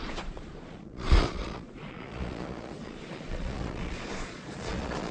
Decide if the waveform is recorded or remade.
remade